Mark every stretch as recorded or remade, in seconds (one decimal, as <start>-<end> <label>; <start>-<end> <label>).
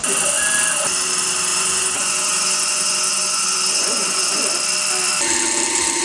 0.0-1.5 recorded; 1.5-4.4 remade; 4.4-6.0 recorded